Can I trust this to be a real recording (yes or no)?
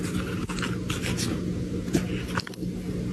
yes